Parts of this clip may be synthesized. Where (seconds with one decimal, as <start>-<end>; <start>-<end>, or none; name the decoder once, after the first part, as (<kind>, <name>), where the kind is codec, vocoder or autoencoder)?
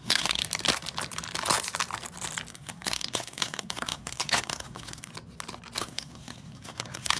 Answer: 0.0-0.4 (codec, SNAC); 2.5-5.1; 5.8-7.2